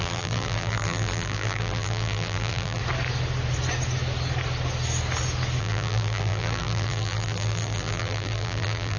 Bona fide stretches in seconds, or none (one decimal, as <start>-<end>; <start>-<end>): 2.8-5.6